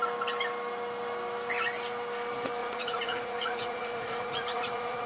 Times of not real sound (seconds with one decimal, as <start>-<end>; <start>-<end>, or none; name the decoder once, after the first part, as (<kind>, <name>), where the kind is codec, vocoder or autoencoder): 2.6-5.1 (vocoder, Vocos)